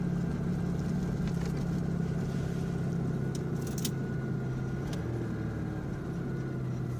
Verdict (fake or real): real